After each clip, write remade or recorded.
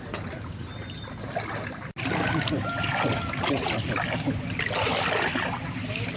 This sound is recorded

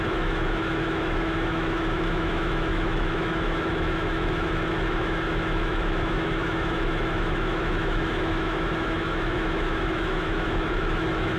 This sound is remade